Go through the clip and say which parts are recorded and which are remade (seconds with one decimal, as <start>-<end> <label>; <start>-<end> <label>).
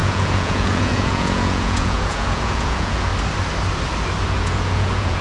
0.0-3.1 remade; 3.1-4.3 recorded; 4.3-5.2 remade